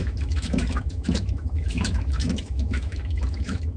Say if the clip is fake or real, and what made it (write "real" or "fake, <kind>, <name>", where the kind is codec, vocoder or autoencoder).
fake, autoencoder, DAC-VAE